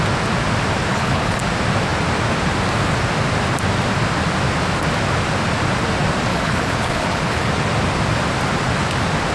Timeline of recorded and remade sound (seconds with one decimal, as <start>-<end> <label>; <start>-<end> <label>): 0.0-0.9 recorded; 0.9-1.4 remade; 1.4-6.3 recorded; 6.3-7.5 remade; 7.5-9.3 recorded

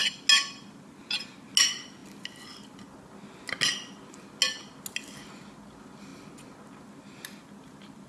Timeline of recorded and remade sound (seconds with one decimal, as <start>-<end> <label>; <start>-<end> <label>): 0.0-8.1 recorded

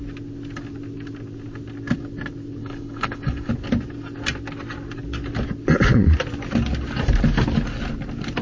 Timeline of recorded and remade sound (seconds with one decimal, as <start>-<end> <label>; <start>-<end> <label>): 0.0-2.6 recorded; 2.6-3.5 remade; 3.5-8.4 recorded

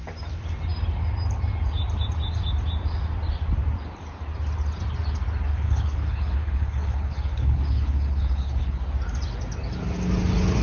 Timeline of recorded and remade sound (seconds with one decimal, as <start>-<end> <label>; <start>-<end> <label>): 0.0-5.5 recorded; 5.5-8.8 remade; 8.8-10.6 recorded